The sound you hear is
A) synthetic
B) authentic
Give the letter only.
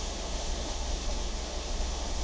A